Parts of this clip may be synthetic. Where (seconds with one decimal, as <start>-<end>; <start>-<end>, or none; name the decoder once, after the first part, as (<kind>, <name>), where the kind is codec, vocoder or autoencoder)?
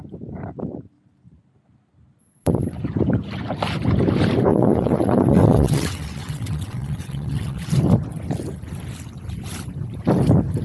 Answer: 2.2-2.8 (vocoder, WaveNeXt); 4.5-7.7